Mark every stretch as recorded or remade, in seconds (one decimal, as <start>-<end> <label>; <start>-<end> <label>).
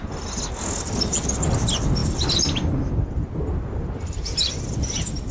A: 0.0-5.3 recorded